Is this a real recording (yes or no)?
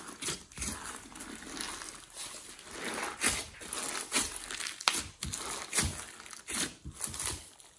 yes